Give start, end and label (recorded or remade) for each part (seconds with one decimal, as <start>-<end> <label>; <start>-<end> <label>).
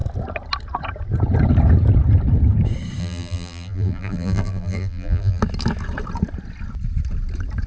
0.0-3.0 recorded; 3.0-5.4 remade; 5.4-7.7 recorded